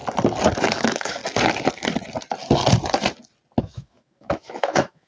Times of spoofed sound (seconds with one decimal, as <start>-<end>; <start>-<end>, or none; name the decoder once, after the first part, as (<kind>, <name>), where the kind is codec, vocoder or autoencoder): 0.6-1.2 (autoencoder, DAC-VAE); 3.6-5.1